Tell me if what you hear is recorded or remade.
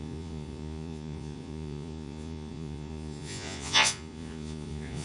remade